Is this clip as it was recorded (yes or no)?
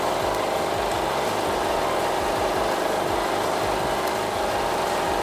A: yes